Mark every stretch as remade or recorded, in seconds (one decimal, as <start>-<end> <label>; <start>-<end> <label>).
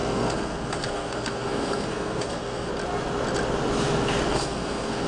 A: 0.0-2.7 remade; 2.7-4.3 recorded; 4.3-5.1 remade